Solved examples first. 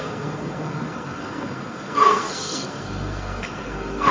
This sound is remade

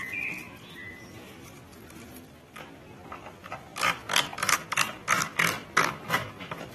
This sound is recorded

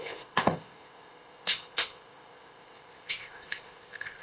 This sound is remade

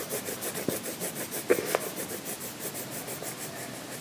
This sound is recorded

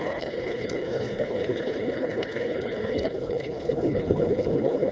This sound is remade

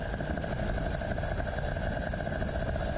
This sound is recorded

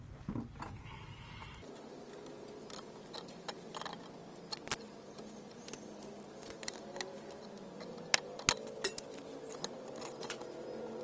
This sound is recorded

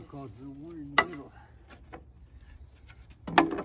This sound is recorded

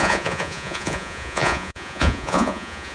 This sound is remade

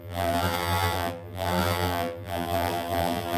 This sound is remade